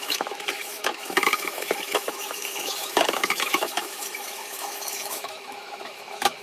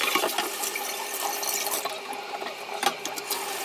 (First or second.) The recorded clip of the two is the second